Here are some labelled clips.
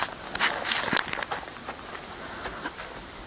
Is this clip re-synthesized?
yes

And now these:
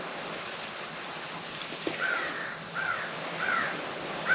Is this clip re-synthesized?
no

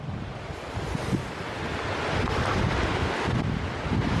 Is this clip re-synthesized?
no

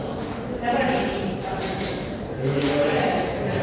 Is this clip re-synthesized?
yes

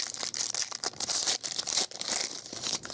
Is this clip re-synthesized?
yes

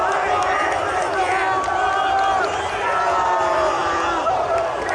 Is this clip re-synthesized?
no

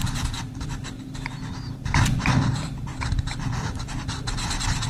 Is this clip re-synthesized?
yes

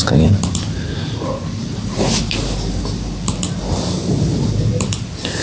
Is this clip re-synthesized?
yes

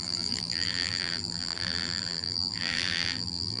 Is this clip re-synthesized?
yes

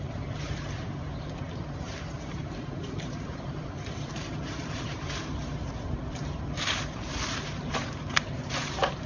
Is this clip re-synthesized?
yes